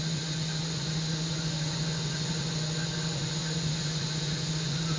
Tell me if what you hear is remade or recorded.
remade